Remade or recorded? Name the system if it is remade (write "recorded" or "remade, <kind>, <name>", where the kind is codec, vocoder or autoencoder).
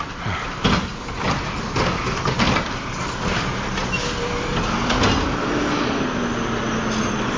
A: recorded